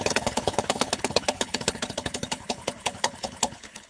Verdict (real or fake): fake